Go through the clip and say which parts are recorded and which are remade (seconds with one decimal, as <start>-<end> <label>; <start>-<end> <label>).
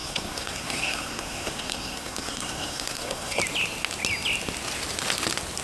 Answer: 0.0-3.4 remade; 3.4-5.6 recorded